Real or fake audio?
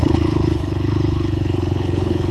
fake